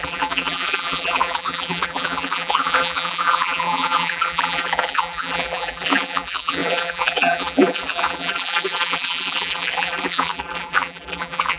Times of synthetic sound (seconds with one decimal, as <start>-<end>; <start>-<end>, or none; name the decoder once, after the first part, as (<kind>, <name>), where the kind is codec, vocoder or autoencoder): 0.0-11.6 (vocoder, BigVGAN v2)